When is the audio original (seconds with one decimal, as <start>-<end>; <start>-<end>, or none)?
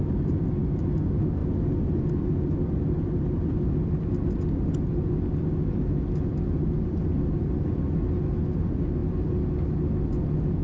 0.0-10.6